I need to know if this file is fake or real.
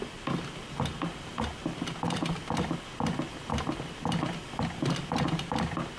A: real